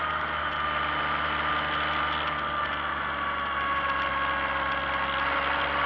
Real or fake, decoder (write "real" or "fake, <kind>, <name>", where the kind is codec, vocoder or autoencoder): real